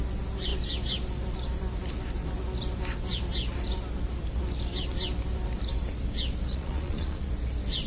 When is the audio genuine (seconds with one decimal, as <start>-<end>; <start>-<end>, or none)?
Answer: 0.0-6.5; 7.3-7.9